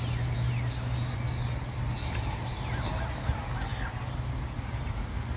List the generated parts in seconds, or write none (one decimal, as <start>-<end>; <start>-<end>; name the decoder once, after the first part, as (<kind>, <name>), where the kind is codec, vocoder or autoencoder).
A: none